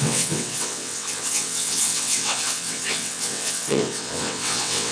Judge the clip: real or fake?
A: fake